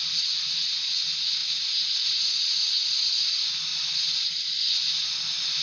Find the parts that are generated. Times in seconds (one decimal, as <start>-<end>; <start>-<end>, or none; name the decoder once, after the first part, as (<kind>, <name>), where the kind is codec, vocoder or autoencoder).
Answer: none